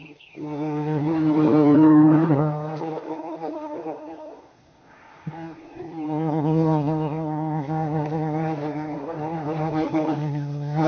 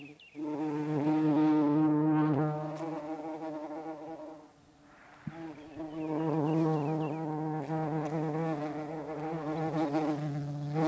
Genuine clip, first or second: second